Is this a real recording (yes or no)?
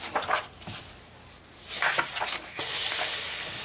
yes